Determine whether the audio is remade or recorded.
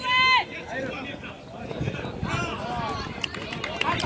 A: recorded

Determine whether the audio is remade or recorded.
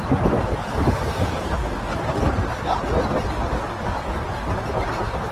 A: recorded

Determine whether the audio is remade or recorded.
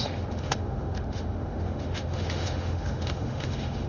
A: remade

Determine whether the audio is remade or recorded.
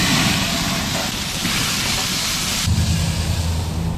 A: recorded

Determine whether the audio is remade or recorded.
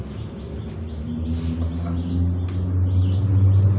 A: recorded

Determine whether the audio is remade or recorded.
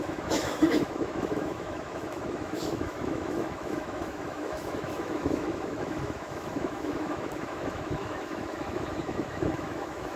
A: remade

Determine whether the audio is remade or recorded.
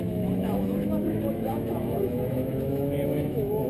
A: remade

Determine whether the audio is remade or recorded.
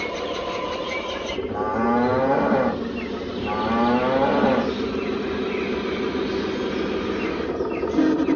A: recorded